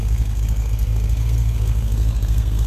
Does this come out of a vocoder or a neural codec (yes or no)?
yes